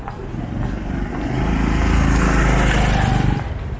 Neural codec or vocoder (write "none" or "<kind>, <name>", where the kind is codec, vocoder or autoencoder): none